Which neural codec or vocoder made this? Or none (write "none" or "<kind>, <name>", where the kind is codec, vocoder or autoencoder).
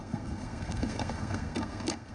codec, SNAC